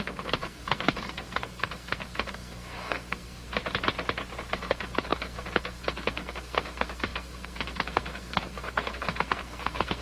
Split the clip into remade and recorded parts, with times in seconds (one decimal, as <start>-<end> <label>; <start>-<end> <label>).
0.0-3.6 remade; 3.6-4.5 recorded; 4.5-10.0 remade